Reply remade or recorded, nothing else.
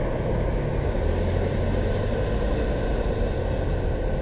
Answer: recorded